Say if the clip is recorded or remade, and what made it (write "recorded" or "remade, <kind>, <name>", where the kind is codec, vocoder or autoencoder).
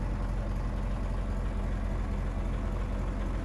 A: recorded